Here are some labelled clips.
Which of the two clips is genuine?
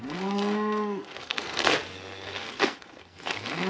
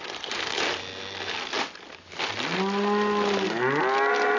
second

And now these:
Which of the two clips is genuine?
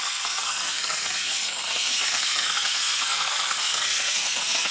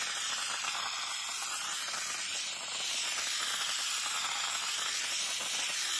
second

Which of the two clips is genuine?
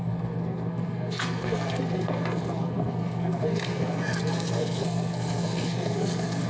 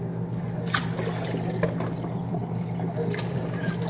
second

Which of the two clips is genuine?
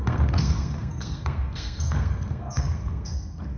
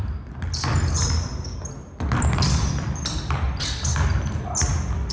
second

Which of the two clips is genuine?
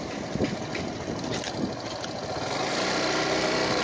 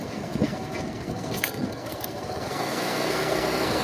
first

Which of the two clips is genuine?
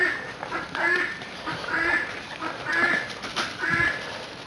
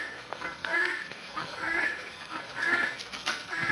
first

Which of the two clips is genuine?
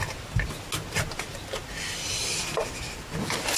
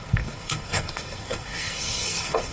first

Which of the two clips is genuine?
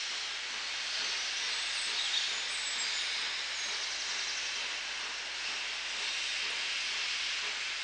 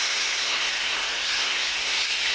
first